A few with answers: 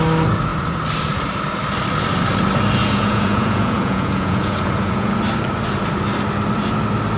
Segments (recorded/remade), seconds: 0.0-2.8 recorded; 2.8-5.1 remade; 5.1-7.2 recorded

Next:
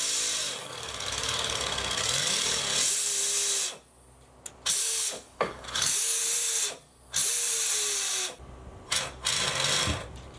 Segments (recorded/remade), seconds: 0.0-0.6 recorded; 0.6-2.6 remade; 2.6-4.8 recorded; 4.8-6.2 remade; 6.2-10.4 recorded

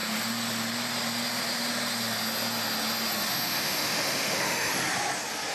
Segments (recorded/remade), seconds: 0.0-3.3 recorded; 3.3-4.7 remade; 4.7-5.5 recorded

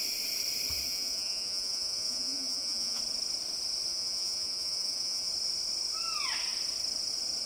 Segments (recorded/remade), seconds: 0.0-0.9 recorded; 0.9-3.0 remade; 3.0-3.9 recorded; 3.9-5.3 remade; 5.3-7.5 recorded

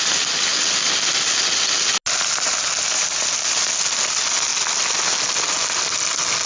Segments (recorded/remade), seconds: 0.0-6.5 recorded

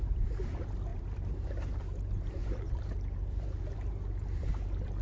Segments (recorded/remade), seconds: 0.0-0.9 recorded; 0.9-3.9 remade; 3.9-5.0 recorded